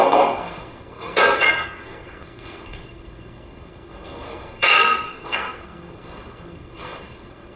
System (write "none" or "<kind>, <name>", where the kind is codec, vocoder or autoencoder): codec, SNAC